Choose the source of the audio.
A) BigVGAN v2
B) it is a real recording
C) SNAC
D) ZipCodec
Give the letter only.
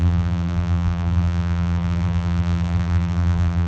A